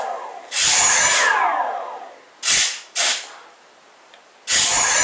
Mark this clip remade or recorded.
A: recorded